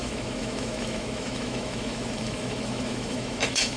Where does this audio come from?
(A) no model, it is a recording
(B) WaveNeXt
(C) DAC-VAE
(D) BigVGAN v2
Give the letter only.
C